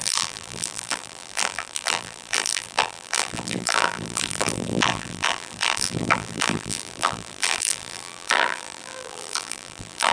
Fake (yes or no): yes